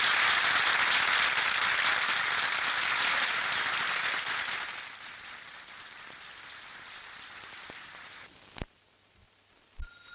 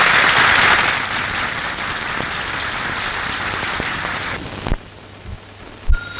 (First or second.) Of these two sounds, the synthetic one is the first